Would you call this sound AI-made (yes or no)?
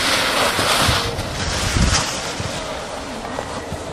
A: no